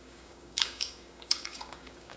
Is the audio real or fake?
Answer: fake